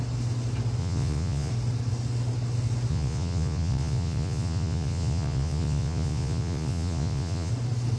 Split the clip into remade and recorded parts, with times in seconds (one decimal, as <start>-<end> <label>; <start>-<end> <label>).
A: 0.0-0.8 recorded; 0.8-1.5 remade; 1.5-2.9 recorded; 2.9-7.5 remade; 7.5-8.0 recorded